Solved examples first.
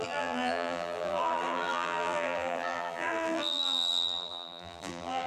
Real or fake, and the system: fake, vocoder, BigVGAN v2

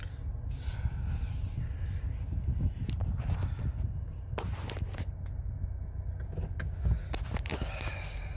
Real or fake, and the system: real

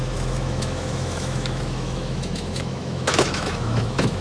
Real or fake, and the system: fake, autoencoder, DAC-VAE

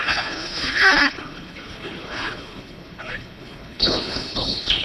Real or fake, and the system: fake, codec, HILCodec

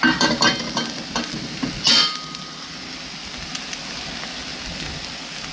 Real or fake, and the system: real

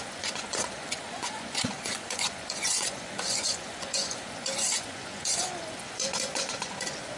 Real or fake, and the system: fake, vocoder, Vocos